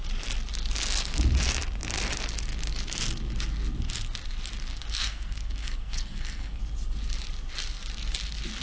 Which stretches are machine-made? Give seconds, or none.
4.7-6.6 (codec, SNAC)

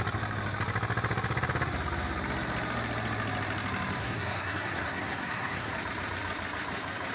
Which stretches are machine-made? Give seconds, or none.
4.0-5.7 (codec, SNAC)

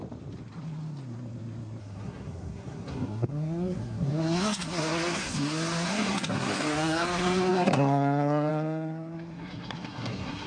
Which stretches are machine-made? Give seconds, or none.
1.8-10.5 (codec, SNAC)